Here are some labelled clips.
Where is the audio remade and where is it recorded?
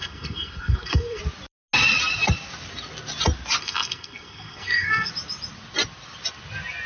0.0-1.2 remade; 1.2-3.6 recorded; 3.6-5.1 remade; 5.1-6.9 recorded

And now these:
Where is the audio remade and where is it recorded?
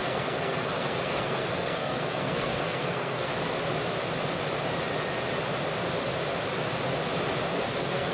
0.0-3.3 remade; 3.3-7.5 recorded; 7.5-8.1 remade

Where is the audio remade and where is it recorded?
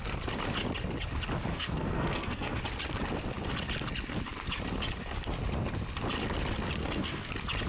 0.0-1.5 recorded; 1.5-2.6 remade; 2.6-6.8 recorded; 6.8-7.3 remade; 7.3-7.7 recorded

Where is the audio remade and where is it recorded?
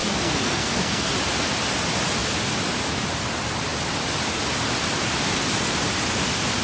0.0-1.1 remade; 1.1-6.6 recorded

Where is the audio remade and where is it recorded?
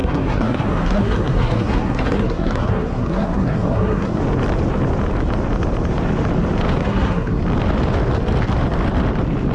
0.0-4.2 remade; 4.2-6.8 recorded; 6.8-7.4 remade; 7.4-9.5 recorded